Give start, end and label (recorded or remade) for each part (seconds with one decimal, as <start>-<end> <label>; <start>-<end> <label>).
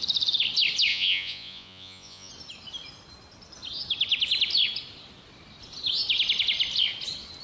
0.0-0.9 recorded; 0.9-2.3 remade; 2.3-7.4 recorded